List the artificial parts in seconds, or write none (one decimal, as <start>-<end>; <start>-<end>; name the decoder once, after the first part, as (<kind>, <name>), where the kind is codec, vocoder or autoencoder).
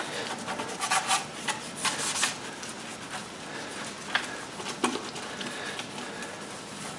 none